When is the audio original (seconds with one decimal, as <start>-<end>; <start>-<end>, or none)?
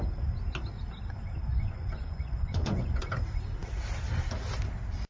0.0-1.4; 3.0-5.1